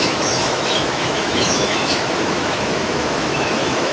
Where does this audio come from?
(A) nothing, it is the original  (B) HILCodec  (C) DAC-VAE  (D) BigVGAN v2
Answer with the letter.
C